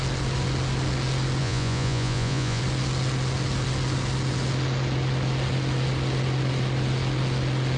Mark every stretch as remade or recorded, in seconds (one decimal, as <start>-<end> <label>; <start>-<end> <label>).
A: 0.0-1.4 recorded; 1.4-2.6 remade; 2.6-7.8 recorded